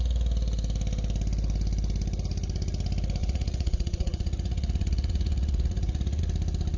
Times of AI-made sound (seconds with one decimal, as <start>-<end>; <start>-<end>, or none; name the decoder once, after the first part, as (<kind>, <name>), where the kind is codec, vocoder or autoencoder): 3.2-6.2 (vocoder, Vocos)